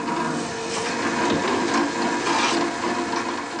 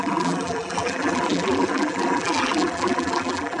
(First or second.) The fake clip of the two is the second